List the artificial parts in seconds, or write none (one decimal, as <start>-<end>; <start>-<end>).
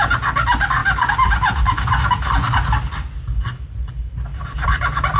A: 4.3-5.2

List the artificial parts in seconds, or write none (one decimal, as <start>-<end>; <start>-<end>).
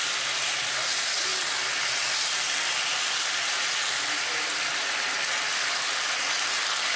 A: none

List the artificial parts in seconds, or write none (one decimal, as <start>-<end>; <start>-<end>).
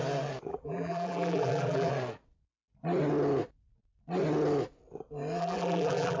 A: 0.5-1.9; 5.4-6.2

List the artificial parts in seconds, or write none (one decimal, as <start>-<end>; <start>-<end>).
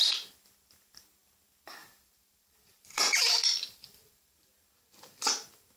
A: 1.8-4.5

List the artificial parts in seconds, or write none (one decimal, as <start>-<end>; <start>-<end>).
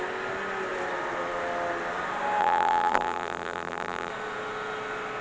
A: 2.4-4.1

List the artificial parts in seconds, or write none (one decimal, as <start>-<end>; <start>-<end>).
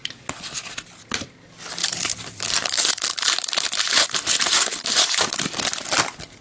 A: 1.8-5.6